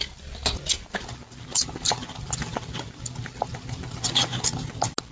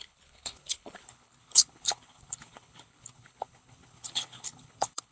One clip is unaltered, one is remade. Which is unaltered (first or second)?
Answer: first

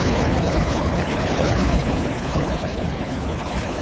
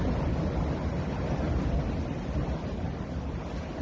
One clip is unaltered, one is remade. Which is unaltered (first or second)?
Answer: second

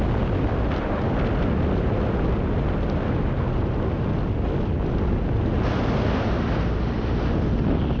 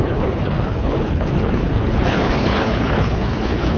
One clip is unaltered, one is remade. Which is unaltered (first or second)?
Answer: first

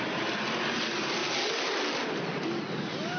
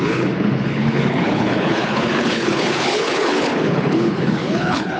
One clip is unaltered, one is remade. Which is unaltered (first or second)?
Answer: first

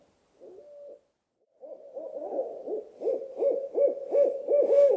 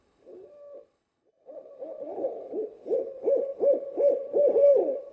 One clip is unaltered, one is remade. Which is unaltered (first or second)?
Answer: first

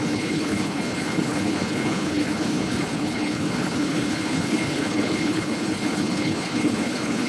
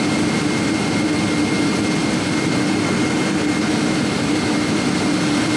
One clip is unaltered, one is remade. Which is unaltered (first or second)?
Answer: second